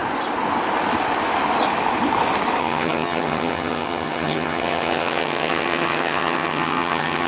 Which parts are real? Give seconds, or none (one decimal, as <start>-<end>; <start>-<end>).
0.0-2.6